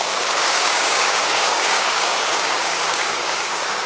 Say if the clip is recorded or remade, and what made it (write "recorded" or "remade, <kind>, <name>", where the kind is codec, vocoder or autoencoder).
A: remade, codec, DAC